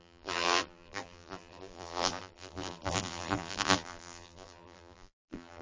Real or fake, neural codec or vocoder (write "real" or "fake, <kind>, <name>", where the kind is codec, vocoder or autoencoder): fake, vocoder, BigVGAN v2